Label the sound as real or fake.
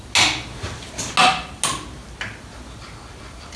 real